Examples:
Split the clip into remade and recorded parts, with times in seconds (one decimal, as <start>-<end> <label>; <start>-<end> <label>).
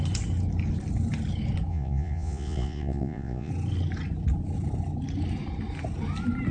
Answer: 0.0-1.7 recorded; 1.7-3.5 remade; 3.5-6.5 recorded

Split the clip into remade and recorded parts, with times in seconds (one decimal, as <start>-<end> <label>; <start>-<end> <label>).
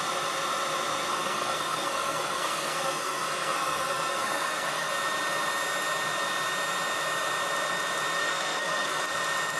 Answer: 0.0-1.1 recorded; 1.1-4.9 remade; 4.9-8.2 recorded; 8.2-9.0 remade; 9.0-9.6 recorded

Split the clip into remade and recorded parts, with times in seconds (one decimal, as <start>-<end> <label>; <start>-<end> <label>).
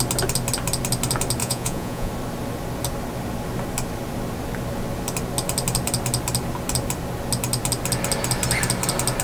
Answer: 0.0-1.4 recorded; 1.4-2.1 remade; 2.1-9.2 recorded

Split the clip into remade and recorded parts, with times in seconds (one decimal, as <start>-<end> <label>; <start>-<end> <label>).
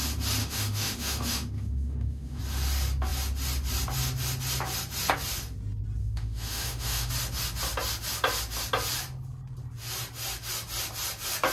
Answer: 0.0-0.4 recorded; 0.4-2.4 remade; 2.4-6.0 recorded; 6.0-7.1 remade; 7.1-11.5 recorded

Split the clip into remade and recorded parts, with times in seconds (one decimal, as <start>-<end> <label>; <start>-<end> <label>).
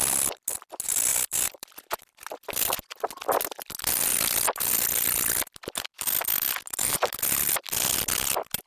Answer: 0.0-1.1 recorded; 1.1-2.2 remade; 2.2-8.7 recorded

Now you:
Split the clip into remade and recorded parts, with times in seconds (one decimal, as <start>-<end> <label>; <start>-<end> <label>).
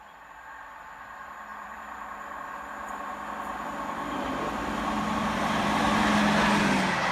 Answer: 0.0-1.5 recorded; 1.5-5.8 remade; 5.8-7.1 recorded